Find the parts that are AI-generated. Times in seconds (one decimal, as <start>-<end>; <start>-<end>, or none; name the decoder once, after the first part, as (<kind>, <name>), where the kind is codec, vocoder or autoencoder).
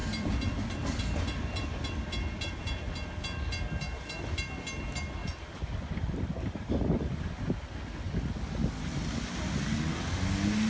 0.0-2.6 (vocoder, BigVGAN v2); 5.2-7.2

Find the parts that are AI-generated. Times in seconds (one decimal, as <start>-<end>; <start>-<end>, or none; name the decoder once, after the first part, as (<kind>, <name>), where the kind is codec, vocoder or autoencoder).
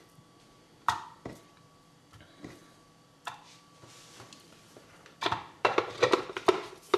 0.0-7.0 (vocoder, BigVGAN v2)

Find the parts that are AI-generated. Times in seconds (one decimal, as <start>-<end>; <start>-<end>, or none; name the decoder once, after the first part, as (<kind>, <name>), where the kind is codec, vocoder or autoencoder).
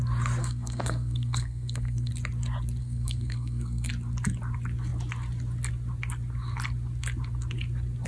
0.4-2.1 (codec, SNAC); 2.8-3.9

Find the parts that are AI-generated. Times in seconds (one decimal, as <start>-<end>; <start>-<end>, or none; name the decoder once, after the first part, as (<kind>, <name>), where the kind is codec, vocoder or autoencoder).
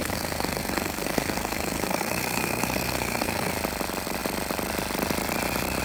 0.0-3.5 (codec, SNAC)